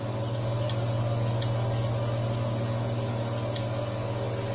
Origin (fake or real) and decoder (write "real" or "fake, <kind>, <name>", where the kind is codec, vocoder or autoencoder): real